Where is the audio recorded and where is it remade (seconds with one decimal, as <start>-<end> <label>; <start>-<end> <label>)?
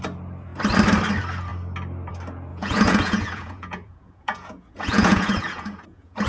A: 0.0-2.5 recorded; 2.5-6.3 remade